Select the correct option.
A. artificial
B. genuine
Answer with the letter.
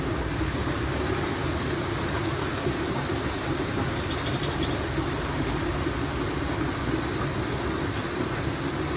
B